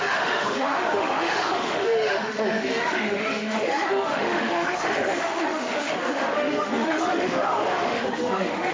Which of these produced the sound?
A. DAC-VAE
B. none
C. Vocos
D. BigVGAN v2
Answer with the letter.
A